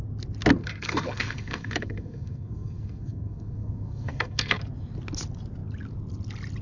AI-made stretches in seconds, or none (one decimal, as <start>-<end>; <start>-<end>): 0.6-4.6